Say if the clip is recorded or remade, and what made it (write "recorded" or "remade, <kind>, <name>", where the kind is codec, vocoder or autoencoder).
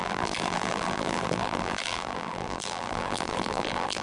remade, vocoder, BigVGAN v2